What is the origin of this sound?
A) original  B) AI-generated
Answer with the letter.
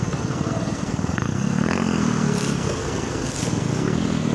B